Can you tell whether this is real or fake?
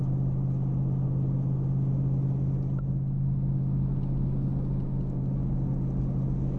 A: real